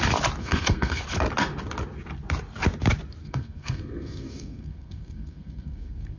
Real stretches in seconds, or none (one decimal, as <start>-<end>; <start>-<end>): 0.0-0.4; 1.0-3.2